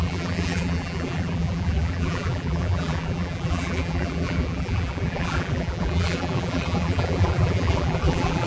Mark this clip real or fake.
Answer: fake